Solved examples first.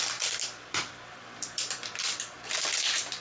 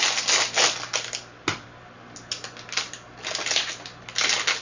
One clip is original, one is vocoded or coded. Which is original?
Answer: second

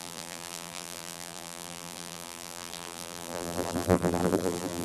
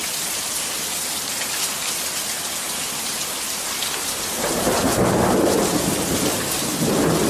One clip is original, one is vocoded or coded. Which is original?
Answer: second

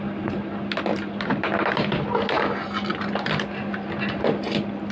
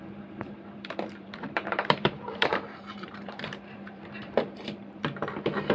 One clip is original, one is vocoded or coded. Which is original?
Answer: first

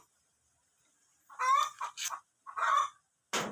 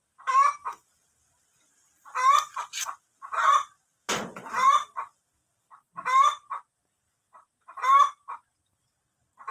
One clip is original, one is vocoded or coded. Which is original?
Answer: first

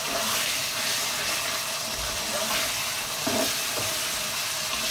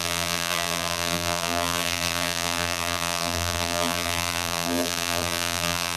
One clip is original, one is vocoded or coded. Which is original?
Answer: first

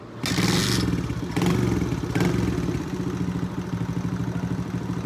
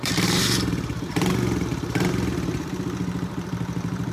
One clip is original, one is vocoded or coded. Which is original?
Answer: first